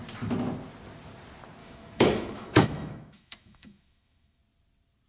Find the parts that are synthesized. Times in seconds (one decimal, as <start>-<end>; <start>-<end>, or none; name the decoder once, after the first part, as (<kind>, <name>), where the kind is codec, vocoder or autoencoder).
1.6-4.4 (autoencoder, DAC-VAE)